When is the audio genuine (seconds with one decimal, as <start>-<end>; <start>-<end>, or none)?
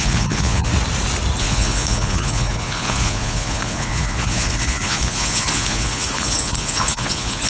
0.7-1.4